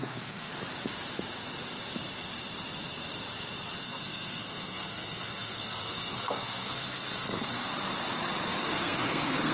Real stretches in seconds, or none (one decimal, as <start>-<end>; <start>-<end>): 0.5-3.8; 7.7-8.6